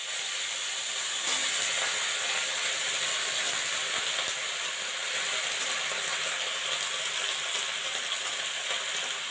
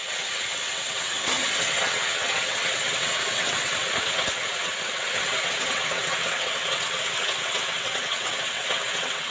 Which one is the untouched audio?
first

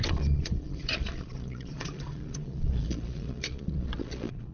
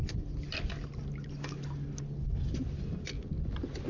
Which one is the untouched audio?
second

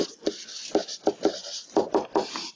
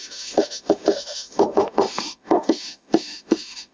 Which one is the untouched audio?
first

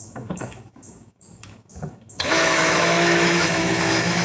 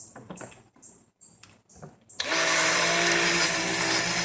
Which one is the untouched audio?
second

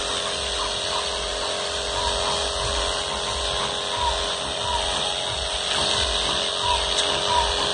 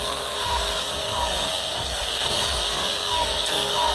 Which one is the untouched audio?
first